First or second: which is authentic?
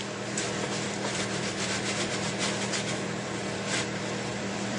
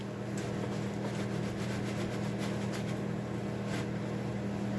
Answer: second